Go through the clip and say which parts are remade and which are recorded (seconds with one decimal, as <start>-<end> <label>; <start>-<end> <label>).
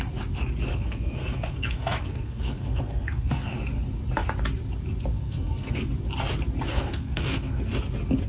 0.0-0.7 recorded; 0.7-3.6 remade; 3.6-5.1 recorded; 5.1-5.9 remade; 5.9-6.7 recorded; 6.7-7.6 remade; 7.6-8.3 recorded